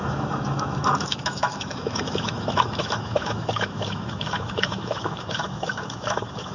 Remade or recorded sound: remade